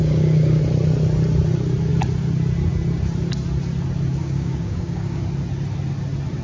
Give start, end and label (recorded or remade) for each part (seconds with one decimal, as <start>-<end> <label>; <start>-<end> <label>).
0.0-0.6 remade; 0.6-4.2 recorded; 4.2-5.2 remade; 5.2-6.4 recorded